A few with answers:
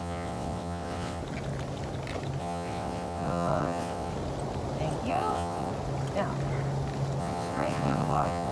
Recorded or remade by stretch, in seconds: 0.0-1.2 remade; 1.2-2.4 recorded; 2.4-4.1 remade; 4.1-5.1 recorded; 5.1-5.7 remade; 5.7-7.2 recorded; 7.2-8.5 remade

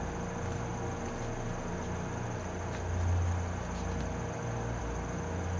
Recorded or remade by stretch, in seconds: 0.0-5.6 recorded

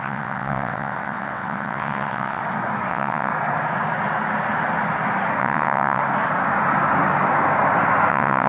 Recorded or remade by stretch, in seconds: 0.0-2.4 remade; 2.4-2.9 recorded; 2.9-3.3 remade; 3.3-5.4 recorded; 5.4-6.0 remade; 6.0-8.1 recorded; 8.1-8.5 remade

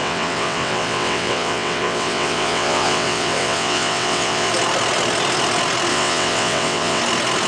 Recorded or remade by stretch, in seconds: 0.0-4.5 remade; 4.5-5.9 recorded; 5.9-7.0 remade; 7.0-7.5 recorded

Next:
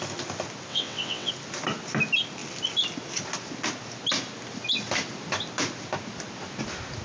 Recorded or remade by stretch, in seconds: 0.0-0.7 recorded; 0.7-1.3 remade; 1.3-7.0 recorded

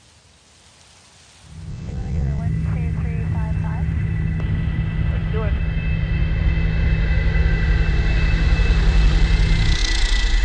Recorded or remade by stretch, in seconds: 0.0-1.7 recorded; 1.7-2.4 remade; 2.4-10.4 recorded